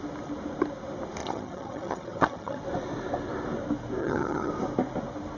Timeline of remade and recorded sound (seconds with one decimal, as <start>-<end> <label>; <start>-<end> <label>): 0.0-1.2 recorded; 1.2-2.6 remade; 2.6-4.0 recorded; 4.0-4.5 remade; 4.5-5.4 recorded

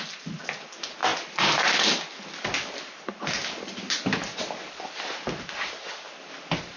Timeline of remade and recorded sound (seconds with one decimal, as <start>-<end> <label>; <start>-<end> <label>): 0.0-6.8 recorded